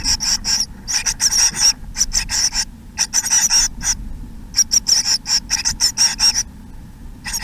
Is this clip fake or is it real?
real